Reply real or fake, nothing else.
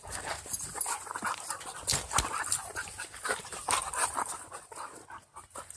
real